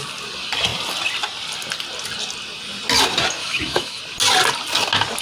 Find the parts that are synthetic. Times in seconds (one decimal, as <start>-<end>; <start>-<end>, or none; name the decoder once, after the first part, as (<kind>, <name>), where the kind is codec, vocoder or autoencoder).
3.4-4.0 (autoencoder, DAC-VAE)